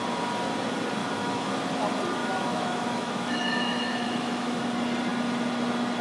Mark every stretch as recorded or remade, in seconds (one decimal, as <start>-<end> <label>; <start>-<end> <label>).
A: 0.0-1.0 recorded; 1.0-1.7 remade; 1.7-2.2 recorded; 2.2-4.6 remade; 4.6-6.0 recorded